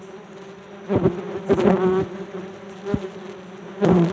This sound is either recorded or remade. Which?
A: recorded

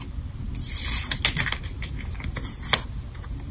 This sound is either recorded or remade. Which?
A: recorded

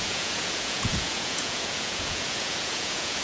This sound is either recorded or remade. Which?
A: remade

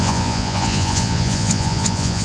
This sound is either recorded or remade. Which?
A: remade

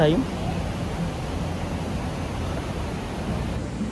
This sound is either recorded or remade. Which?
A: recorded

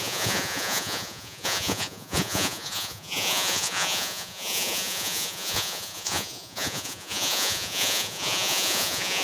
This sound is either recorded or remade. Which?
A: remade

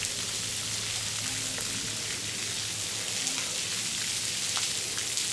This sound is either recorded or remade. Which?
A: recorded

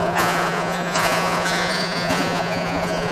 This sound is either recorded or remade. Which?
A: remade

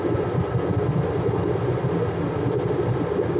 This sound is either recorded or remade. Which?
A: recorded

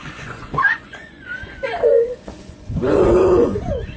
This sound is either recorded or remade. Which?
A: remade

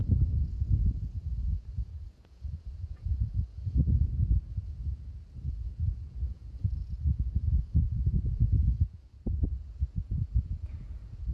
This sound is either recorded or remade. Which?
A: remade